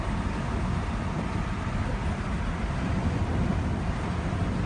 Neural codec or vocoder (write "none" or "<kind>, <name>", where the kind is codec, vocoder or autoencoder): none